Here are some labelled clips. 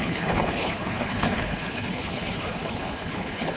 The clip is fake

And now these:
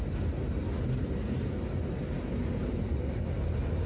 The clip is real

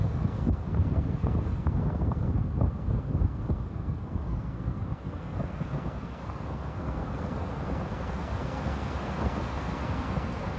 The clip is fake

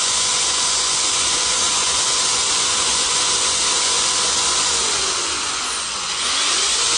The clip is fake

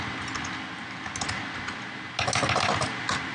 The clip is real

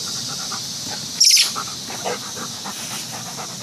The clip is real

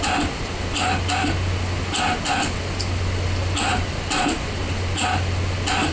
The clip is real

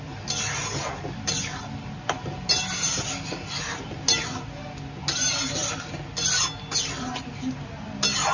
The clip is real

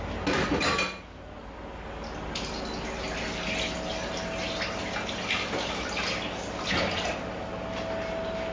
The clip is real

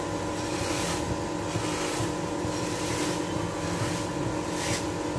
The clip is real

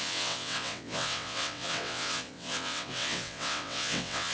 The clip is fake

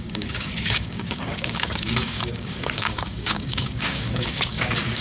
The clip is fake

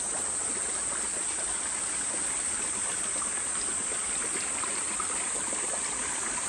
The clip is real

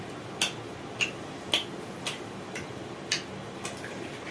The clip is real